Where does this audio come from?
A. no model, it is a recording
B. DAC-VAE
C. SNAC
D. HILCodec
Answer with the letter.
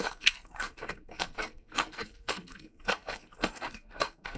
C